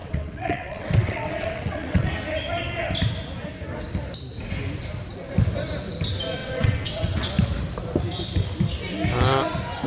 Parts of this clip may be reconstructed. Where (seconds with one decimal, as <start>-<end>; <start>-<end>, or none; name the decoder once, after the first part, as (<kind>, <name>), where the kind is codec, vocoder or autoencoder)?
0.0-2.1 (vocoder, WaveNeXt); 6.4-7.3